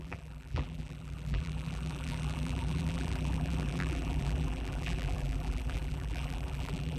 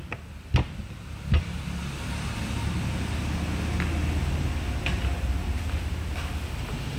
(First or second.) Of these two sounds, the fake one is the first